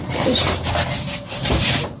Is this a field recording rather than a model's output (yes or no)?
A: no